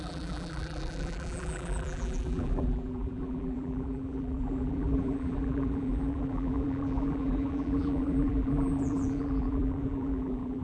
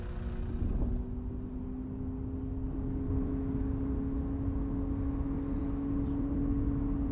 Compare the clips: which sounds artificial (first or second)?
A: first